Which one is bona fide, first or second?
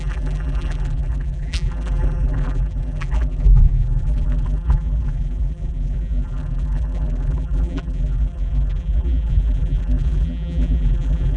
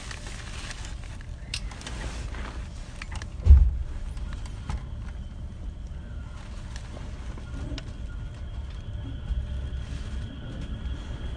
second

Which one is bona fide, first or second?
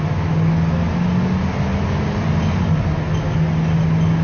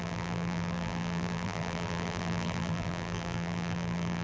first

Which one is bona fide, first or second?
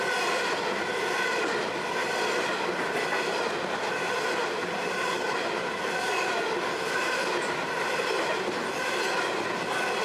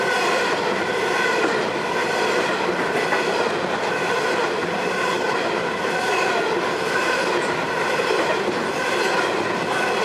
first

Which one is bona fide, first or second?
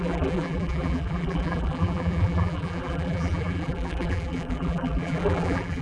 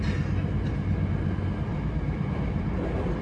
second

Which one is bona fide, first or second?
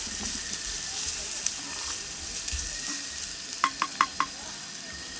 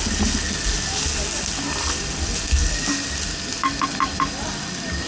second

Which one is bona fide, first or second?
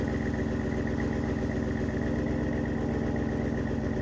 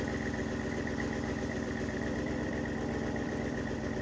first